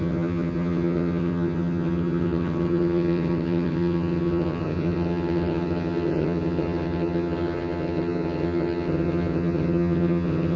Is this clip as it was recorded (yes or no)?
no